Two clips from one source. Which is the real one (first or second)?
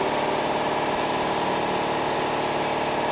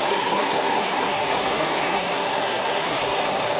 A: first